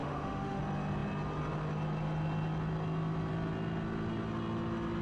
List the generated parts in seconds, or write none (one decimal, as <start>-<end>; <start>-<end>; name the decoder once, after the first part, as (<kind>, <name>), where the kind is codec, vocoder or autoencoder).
0.0-0.6 (autoencoder, DAC-VAE)